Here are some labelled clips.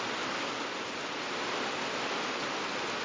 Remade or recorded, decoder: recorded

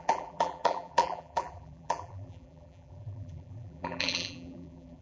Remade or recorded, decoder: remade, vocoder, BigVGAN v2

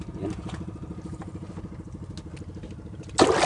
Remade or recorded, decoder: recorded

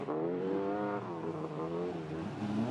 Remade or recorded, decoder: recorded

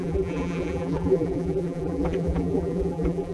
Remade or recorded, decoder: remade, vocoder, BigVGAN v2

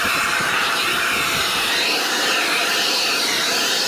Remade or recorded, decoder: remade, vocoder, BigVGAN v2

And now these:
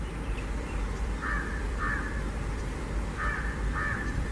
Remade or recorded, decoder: remade, vocoder, BigVGAN v2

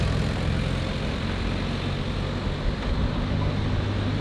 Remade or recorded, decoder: recorded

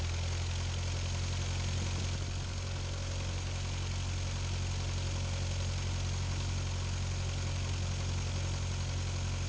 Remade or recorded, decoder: recorded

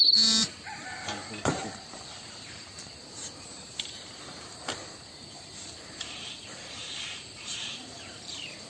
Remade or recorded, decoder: remade, vocoder, BigVGAN v2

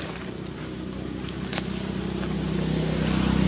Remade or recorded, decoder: recorded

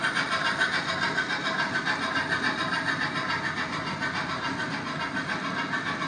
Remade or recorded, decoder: recorded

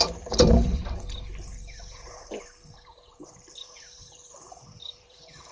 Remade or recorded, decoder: remade, vocoder, BigVGAN v2